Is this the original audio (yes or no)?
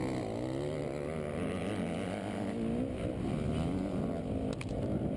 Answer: yes